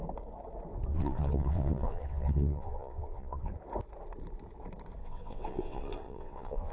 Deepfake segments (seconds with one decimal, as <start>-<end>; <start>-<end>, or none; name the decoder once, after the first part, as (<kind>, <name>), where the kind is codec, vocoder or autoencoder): 0.9-3.5 (vocoder, WaveNeXt); 5.0-6.7